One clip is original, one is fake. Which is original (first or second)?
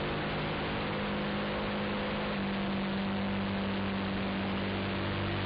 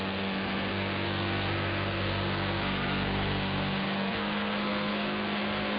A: first